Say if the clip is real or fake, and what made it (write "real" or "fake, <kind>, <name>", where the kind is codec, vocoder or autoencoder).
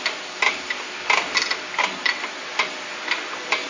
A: real